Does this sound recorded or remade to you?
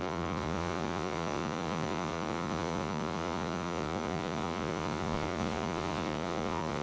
remade